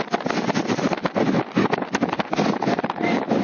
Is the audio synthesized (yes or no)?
yes